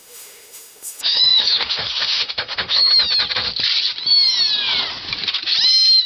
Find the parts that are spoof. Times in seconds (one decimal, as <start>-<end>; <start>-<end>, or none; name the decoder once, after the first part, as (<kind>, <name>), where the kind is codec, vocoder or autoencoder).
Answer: 0.0-2.9 (autoencoder, DAC-VAE)